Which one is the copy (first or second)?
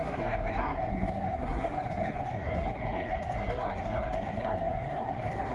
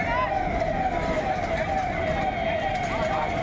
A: first